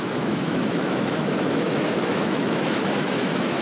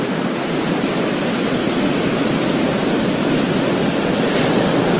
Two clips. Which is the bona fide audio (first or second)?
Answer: second